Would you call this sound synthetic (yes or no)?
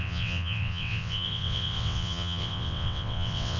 yes